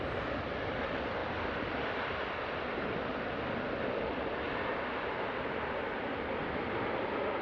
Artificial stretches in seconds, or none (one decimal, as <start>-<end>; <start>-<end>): none